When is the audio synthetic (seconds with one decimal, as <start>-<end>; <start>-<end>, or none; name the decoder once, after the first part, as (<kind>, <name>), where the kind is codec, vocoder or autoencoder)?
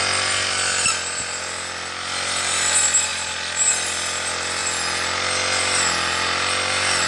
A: none